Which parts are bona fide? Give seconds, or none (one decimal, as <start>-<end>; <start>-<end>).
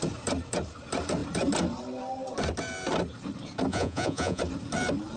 0.0-3.7; 4.4-5.2